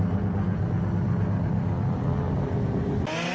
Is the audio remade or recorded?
recorded